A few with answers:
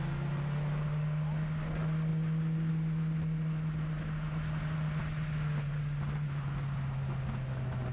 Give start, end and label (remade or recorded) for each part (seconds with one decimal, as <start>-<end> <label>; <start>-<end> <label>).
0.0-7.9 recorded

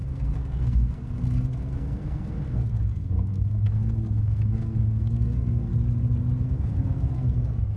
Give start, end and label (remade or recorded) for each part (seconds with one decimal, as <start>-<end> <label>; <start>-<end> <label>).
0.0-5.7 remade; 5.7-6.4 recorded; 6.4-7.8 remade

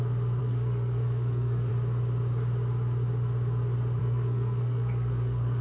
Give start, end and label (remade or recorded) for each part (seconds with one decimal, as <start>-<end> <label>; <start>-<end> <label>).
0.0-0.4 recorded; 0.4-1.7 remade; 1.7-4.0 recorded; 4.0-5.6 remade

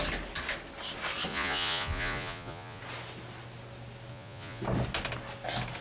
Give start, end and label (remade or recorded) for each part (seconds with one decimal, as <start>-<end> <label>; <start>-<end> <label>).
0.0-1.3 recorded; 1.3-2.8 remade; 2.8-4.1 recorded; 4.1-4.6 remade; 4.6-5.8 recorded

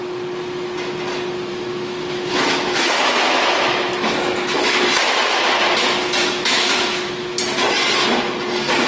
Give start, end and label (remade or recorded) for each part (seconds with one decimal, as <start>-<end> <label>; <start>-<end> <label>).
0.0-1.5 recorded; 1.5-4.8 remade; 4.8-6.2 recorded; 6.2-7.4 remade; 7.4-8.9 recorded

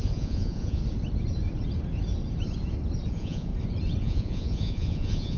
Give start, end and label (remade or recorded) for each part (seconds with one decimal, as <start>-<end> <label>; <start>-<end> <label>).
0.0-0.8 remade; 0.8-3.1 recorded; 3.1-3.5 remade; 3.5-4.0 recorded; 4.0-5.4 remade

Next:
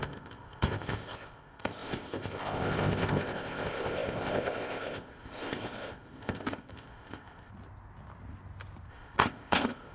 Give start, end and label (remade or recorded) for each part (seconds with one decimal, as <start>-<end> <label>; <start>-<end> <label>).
0.0-7.5 remade; 7.5-8.9 recorded; 8.9-9.9 remade

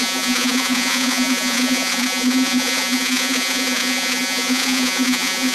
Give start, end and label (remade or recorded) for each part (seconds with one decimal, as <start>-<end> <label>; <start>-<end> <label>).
0.0-5.5 remade